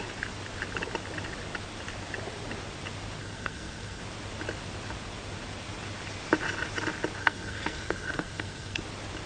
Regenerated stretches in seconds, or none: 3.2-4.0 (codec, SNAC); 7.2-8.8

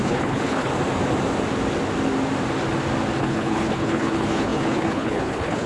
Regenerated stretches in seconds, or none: 0.0-0.7 (codec, HILCodec); 3.2-5.7

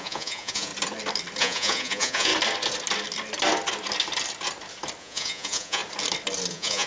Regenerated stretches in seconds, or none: 0.0-0.7 (vocoder, Vocos); 1.4-2.3; 5.0-5.8; 6.5-6.9

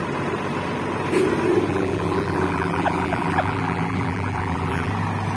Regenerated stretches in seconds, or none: 1.7-4.9 (vocoder, BigVGAN v2)

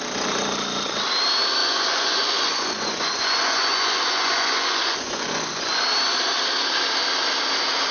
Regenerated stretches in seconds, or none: 1.6-5.8 (vocoder, Vocos)

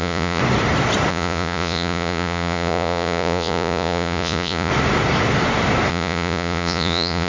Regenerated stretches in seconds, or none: 0.0-0.4 (vocoder, Vocos); 1.1-4.7; 5.9-7.3

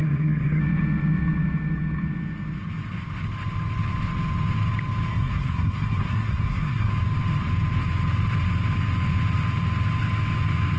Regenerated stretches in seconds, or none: 0.0-0.6 (codec, SNAC); 5.1-6.9

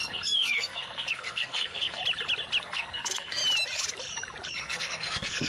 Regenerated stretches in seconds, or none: 0.0-2.0 (codec, SNAC); 2.6-3.4; 4.6-5.5